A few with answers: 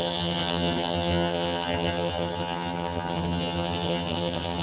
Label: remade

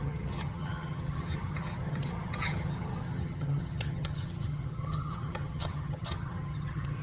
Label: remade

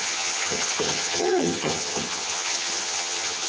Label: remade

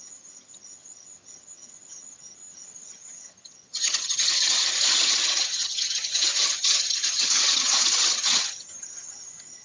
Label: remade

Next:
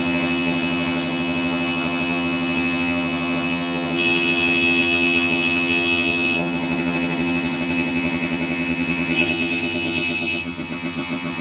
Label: remade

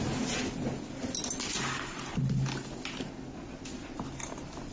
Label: recorded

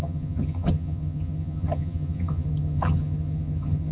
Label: remade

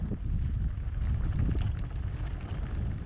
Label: recorded